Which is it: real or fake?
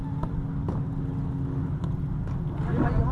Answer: real